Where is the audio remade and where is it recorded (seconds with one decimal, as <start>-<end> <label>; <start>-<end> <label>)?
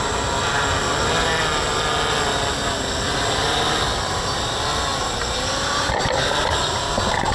0.0-4.9 recorded; 4.9-6.0 remade; 6.0-7.3 recorded